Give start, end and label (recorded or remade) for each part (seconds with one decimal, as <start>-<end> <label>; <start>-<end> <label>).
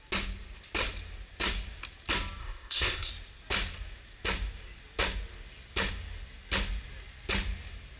0.0-2.4 recorded; 2.4-3.1 remade; 3.1-8.0 recorded